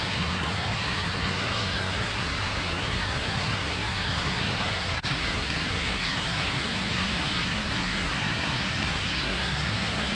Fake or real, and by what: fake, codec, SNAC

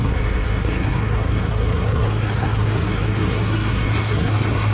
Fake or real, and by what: fake, codec, SNAC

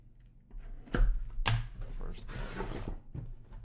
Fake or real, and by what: real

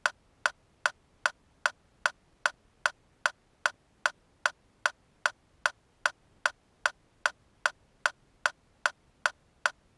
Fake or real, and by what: real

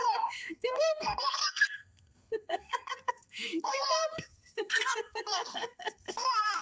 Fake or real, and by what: fake, codec, SNAC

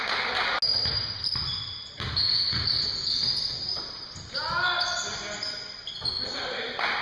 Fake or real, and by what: real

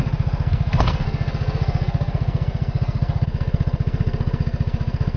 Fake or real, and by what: fake, codec, SNAC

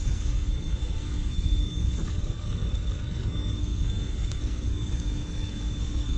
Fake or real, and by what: fake, codec, SNAC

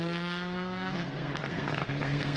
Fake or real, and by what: fake, codec, SNAC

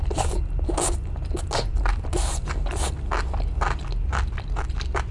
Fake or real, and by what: real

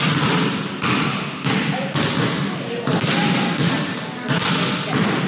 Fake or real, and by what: real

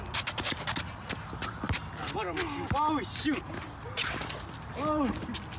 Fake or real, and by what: real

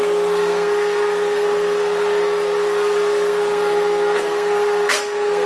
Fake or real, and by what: fake, codec, SNAC